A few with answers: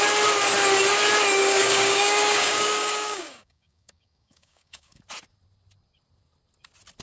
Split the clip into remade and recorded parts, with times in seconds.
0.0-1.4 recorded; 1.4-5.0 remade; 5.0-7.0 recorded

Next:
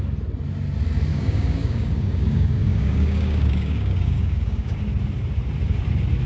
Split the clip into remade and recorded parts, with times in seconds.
0.0-1.1 recorded; 1.1-4.8 remade; 4.8-6.3 recorded

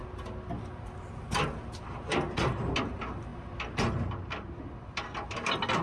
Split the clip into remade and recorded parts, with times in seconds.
0.0-5.8 recorded

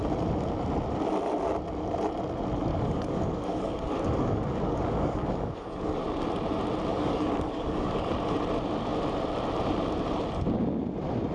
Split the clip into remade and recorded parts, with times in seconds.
0.0-2.7 recorded; 2.7-6.0 remade; 6.0-6.9 recorded; 6.9-8.1 remade; 8.1-11.3 recorded

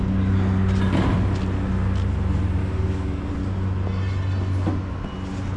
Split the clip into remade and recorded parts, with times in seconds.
0.0-2.6 recorded; 2.6-3.3 remade; 3.3-5.6 recorded

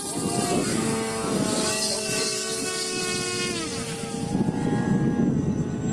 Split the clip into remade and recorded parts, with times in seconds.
0.0-0.7 recorded; 0.7-3.0 remade; 3.0-5.9 recorded